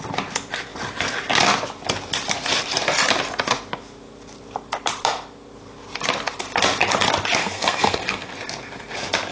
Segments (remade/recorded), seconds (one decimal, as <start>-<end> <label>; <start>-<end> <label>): 0.0-7.4 recorded; 7.4-8.3 remade; 8.3-9.3 recorded